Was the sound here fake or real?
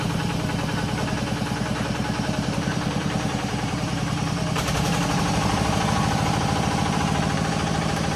fake